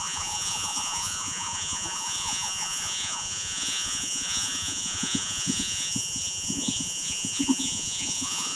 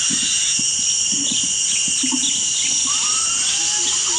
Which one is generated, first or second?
first